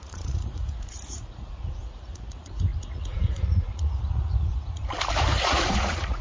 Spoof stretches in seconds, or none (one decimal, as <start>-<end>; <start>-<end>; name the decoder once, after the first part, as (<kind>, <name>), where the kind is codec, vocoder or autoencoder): 0.0-4.8 (vocoder, Vocos); 5.3-6.2